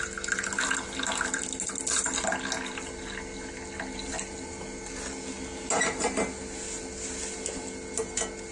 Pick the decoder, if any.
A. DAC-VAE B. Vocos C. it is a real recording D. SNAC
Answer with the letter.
C